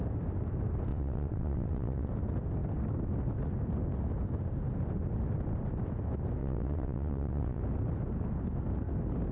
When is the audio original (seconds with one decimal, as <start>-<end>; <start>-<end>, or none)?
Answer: 0.0-0.9; 2.1-6.4; 7.6-9.3